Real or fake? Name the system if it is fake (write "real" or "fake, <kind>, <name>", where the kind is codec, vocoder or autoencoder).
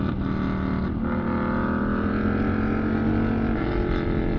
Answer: real